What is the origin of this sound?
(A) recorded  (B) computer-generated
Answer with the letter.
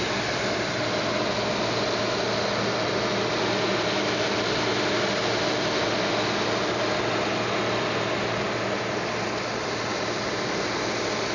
A